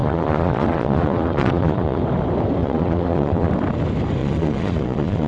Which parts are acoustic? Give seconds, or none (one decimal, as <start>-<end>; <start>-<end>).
2.0-2.6; 3.5-4.2